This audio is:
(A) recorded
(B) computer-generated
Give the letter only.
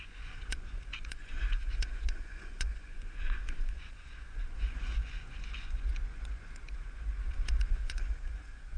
B